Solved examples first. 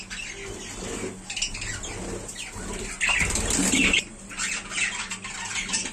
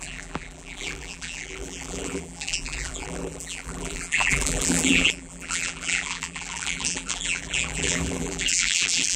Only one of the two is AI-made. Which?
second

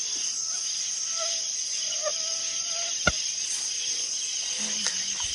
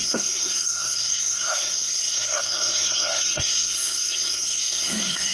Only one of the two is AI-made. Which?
second